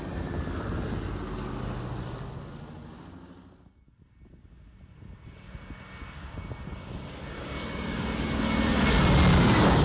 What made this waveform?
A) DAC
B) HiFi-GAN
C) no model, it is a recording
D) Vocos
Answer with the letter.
C